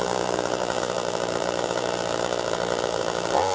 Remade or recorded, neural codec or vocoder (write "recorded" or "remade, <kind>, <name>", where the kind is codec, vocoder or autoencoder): remade, vocoder, BigVGAN v2